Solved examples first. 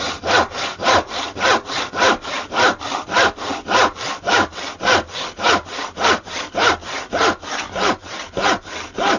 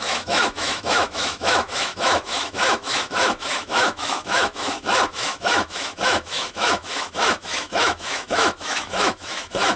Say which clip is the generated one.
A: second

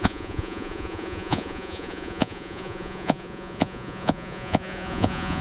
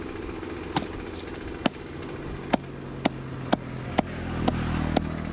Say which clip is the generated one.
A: first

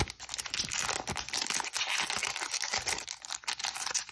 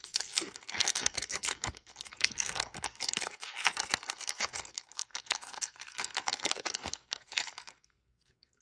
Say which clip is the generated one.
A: second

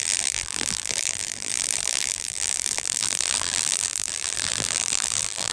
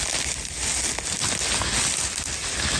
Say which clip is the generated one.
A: first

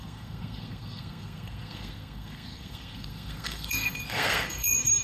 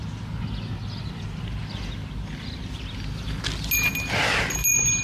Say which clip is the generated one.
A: first